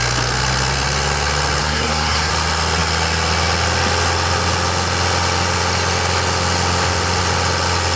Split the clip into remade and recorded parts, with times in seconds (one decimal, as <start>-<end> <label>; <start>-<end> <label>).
0.0-1.6 recorded; 1.6-2.3 remade; 2.3-8.0 recorded